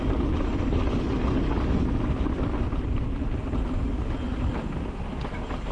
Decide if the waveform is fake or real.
real